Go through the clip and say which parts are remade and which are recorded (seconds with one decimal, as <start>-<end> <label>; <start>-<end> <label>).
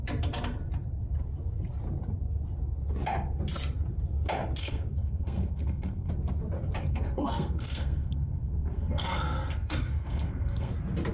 0.0-4.6 recorded; 4.6-6.1 remade; 6.1-6.9 recorded; 6.9-10.7 remade; 10.7-11.1 recorded